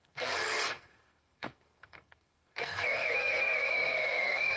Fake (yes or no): yes